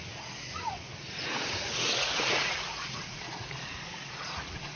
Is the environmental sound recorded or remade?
remade